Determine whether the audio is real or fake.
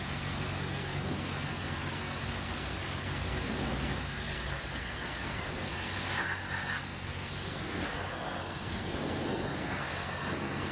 fake